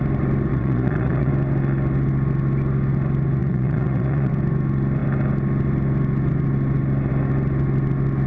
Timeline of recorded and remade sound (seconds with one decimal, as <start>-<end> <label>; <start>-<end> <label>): 0.0-0.5 recorded; 0.5-1.3 remade; 1.3-3.4 recorded; 3.4-4.3 remade; 4.3-8.3 recorded